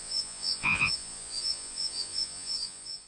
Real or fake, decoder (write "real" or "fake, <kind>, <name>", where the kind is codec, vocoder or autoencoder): fake, vocoder, Vocos